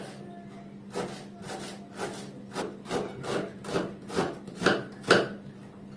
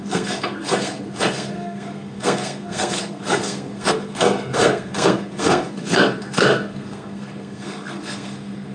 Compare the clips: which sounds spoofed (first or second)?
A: second